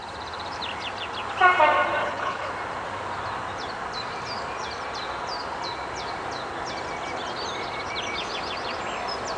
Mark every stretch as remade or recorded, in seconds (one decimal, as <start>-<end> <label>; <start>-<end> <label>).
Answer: 0.0-2.0 recorded; 2.0-2.5 remade; 2.5-9.4 recorded